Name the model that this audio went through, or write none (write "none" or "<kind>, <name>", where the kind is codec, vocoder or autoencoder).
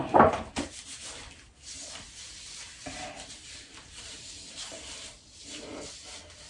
none